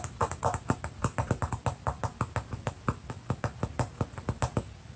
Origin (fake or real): real